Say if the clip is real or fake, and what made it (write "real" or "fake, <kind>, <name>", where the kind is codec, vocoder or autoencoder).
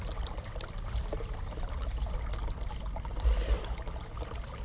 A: real